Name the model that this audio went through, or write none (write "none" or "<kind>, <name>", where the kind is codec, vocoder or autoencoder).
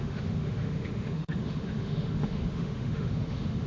autoencoder, DAC-VAE